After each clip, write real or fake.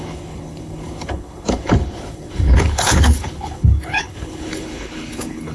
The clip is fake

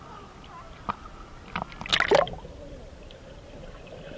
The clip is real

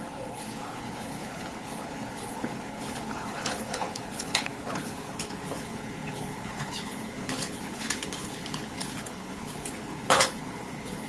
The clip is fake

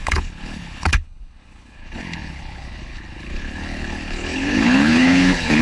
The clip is fake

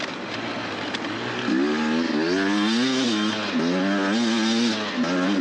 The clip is real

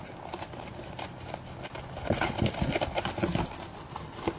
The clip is real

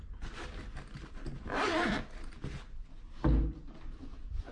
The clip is real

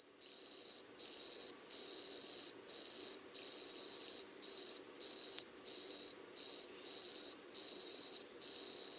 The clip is real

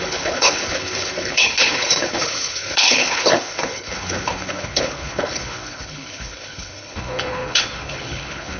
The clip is fake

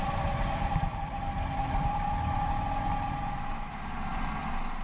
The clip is real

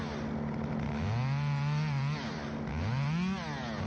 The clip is real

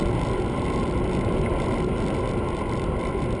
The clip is real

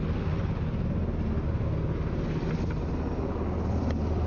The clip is real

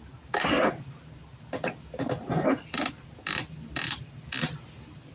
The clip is real